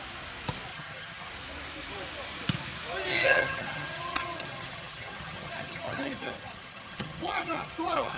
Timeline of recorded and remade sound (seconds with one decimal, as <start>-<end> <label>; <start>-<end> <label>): 0.0-0.7 recorded; 0.7-1.3 remade; 1.3-3.1 recorded; 3.1-8.2 remade